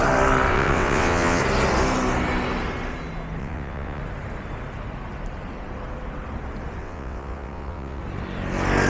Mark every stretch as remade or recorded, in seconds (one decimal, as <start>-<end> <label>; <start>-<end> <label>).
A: 0.0-0.5 recorded; 0.5-1.4 remade; 1.4-3.4 recorded; 3.4-4.0 remade; 4.0-6.8 recorded; 6.8-8.0 remade; 8.0-8.9 recorded